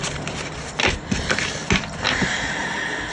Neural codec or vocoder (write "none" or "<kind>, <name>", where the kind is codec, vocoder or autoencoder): none